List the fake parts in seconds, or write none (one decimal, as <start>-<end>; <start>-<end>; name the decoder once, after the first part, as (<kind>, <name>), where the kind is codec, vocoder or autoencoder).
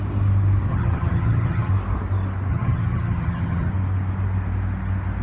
0.7-1.7 (vocoder, HiFi-GAN); 2.5-3.7